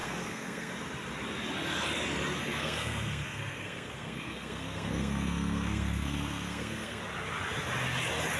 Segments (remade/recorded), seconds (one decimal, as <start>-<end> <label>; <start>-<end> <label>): 0.0-0.7 remade; 0.7-2.4 recorded; 2.4-7.0 remade; 7.0-8.4 recorded